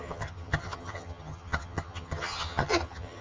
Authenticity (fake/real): fake